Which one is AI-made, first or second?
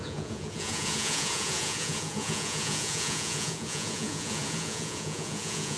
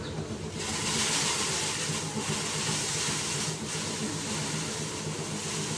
first